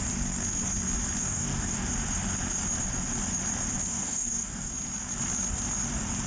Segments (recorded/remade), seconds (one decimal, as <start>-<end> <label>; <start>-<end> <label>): 0.0-1.2 recorded; 1.2-1.9 remade; 1.9-3.9 recorded; 3.9-4.7 remade; 4.7-6.3 recorded